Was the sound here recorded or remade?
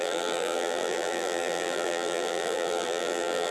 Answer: remade